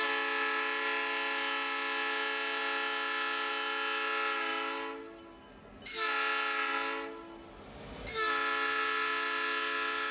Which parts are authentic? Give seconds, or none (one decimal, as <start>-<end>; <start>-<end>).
0.0-10.1